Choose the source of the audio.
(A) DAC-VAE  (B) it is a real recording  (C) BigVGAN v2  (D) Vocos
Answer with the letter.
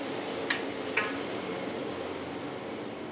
B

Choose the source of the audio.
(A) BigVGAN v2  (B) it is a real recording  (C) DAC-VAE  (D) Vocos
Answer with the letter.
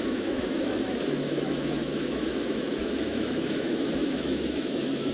C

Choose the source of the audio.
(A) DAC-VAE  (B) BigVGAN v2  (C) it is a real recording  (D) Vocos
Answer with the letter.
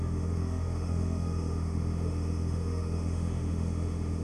A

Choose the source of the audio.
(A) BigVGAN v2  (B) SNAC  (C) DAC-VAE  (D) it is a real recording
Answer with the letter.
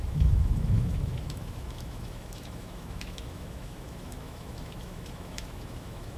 C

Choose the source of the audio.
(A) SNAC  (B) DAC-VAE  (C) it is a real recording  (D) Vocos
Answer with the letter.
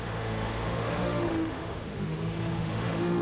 B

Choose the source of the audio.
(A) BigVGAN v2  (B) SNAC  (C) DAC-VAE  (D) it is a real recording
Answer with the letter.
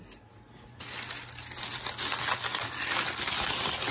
D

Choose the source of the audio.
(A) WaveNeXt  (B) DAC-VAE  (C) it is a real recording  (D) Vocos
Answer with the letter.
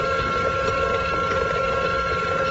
C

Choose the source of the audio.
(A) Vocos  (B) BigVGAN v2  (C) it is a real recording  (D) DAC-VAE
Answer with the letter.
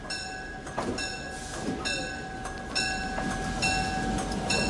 C